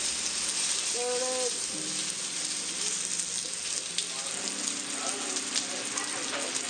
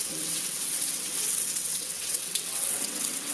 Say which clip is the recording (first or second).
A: first